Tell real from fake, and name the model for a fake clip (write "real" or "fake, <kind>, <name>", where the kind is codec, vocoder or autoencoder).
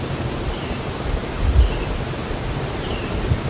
fake, vocoder, BigVGAN v2